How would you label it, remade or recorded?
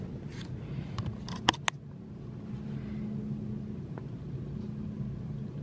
recorded